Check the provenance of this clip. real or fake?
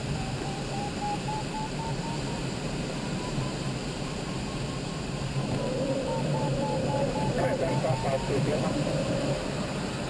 fake